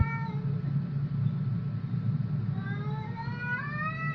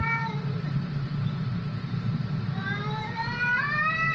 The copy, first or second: second